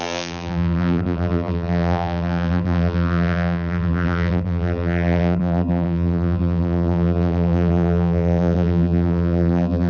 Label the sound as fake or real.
fake